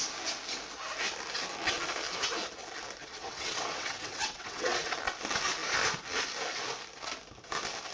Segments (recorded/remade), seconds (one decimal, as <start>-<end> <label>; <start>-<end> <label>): 0.0-3.0 recorded; 3.0-4.9 remade; 4.9-7.9 recorded